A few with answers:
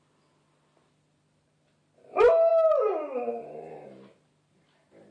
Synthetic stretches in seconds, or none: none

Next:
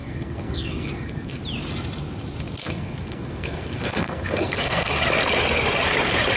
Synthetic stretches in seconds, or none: 0.0-1.4 (codec, SNAC); 2.6-4.9

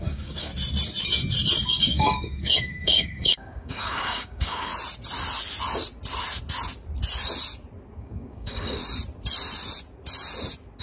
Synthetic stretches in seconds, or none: 0.0-0.5 (codec, DAC); 1.7-4.7; 8.0-8.8

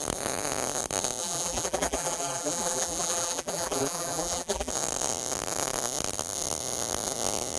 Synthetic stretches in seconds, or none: 1.2-4.7 (vocoder, BigVGAN v2)

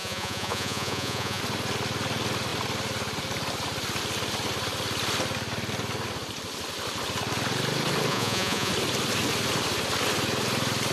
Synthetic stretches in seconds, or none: 0.0-1.4 (vocoder, Vocos); 8.1-8.7

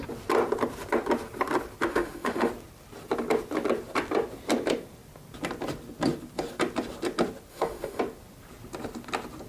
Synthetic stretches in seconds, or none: 1.9-2.5 (autoencoder, DAC-VAE); 7.5-8.0